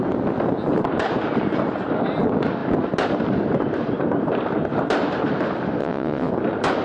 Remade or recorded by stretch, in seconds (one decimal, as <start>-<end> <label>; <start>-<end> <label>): 0.0-5.8 recorded; 5.8-6.3 remade; 6.3-6.8 recorded